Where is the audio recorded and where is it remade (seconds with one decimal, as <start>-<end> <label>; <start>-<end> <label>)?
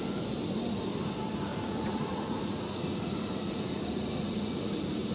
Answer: 0.0-1.5 recorded; 1.5-4.6 remade; 4.6-5.1 recorded